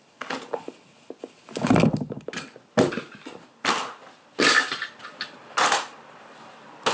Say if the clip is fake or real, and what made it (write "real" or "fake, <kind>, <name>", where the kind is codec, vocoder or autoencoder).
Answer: real